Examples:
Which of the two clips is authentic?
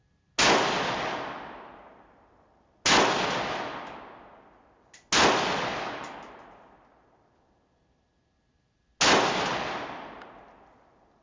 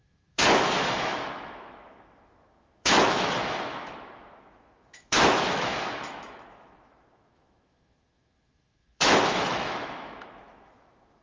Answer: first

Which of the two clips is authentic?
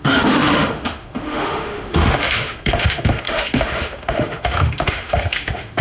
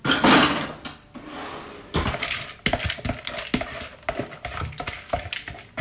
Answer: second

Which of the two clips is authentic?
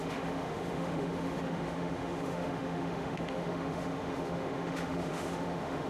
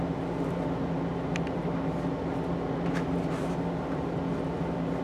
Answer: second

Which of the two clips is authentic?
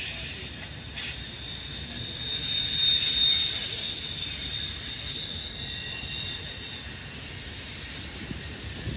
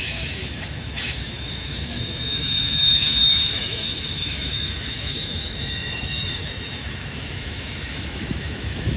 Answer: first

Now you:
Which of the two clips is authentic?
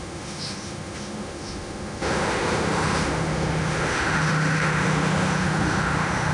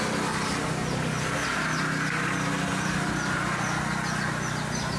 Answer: second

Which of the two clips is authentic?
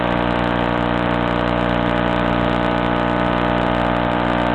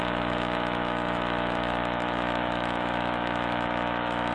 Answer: first